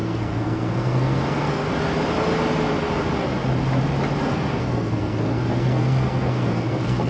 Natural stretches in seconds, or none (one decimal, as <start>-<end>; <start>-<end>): 1.7-4.2